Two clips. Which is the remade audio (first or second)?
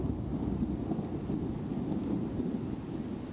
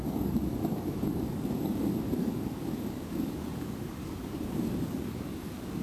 second